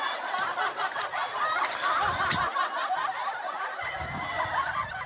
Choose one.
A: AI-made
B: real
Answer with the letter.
B